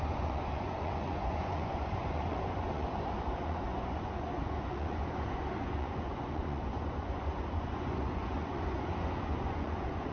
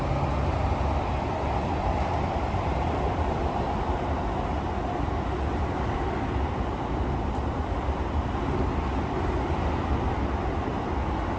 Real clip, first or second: second